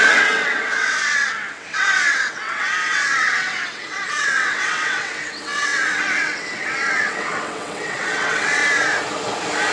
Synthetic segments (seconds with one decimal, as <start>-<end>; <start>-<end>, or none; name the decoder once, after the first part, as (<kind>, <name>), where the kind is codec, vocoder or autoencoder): 0.0-8.6 (vocoder, WaveNeXt)